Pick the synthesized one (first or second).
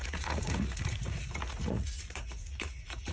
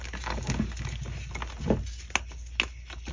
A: first